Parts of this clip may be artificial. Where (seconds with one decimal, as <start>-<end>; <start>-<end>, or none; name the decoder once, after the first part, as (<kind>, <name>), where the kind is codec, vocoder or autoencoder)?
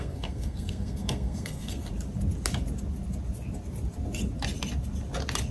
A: 0.0-1.9 (codec, SNAC)